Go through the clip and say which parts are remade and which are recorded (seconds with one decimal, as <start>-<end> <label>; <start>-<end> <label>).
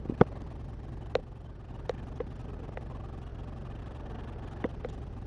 0.0-1.2 recorded; 1.2-1.7 remade; 1.7-5.3 recorded